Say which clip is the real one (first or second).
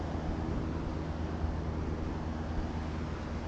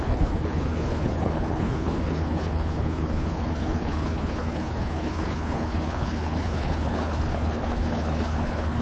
first